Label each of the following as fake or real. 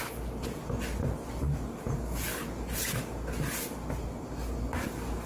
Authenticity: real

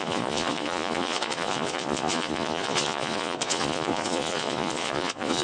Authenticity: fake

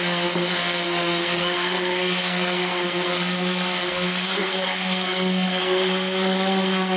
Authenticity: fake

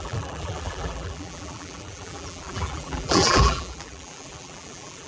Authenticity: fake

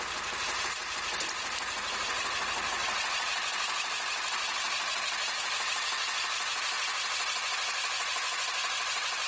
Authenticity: real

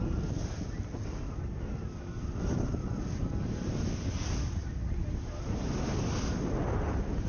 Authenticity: real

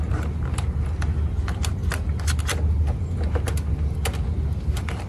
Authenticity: real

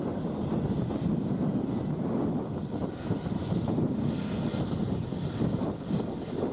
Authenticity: real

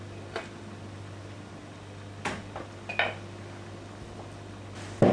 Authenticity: real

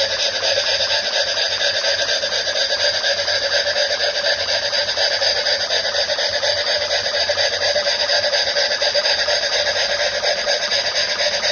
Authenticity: fake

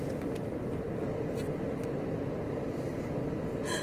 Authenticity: real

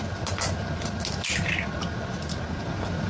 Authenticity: real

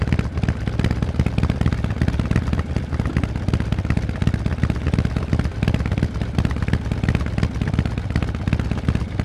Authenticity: real